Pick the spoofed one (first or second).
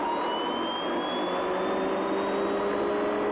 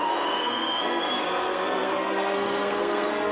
second